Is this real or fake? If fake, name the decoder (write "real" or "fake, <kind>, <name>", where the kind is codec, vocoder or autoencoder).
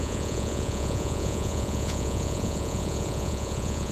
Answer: fake, vocoder, Vocos